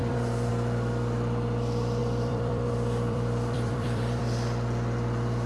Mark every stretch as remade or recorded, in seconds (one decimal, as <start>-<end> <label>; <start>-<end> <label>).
0.0-0.5 remade; 0.5-2.0 recorded; 2.0-4.2 remade; 4.2-5.5 recorded